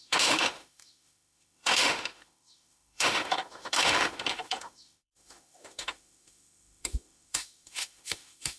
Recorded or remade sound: remade